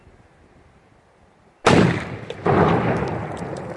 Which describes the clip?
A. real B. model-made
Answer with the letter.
A